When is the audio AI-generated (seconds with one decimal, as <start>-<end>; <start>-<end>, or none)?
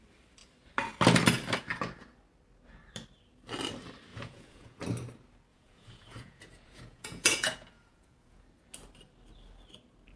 4.1-4.8; 5.5-8.4